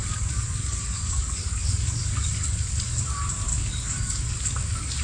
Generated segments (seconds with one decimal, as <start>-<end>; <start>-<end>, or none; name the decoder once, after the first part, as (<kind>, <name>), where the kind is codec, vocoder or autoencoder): 0.0-3.0 (codec, DAC); 3.5-5.0